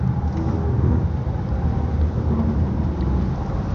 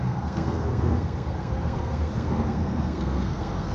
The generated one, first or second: second